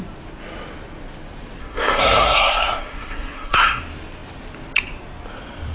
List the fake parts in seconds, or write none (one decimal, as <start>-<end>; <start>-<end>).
1.6-3.8